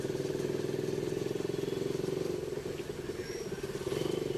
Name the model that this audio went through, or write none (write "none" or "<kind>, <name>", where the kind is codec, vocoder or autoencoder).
none